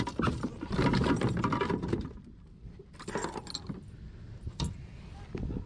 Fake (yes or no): no